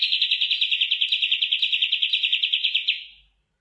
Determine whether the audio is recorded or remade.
recorded